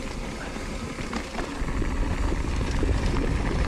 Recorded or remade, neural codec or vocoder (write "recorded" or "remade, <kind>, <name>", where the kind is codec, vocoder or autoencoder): recorded